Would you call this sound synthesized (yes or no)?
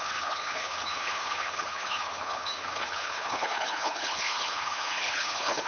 yes